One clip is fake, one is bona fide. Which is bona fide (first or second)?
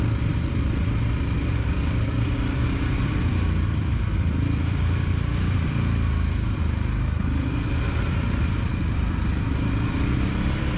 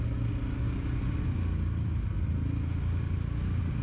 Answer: second